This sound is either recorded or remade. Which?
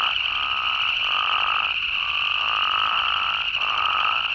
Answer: recorded